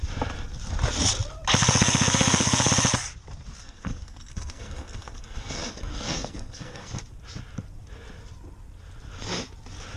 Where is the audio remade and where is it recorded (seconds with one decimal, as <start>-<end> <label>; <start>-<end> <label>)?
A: 0.0-1.6 recorded; 1.6-2.7 remade; 2.7-3.6 recorded; 3.6-7.0 remade; 7.0-10.0 recorded